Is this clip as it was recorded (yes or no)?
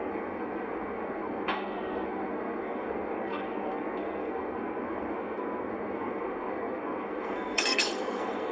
no